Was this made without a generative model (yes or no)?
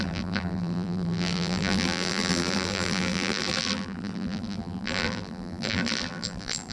no